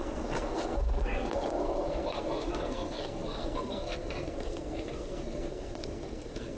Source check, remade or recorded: remade